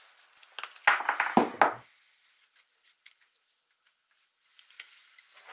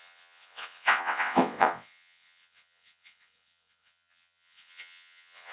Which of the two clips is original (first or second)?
first